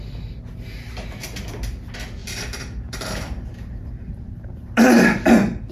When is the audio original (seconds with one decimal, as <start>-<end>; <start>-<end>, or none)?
0.0-2.2